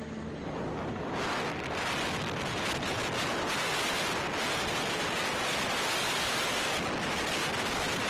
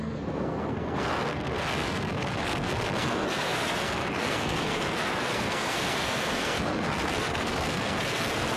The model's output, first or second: second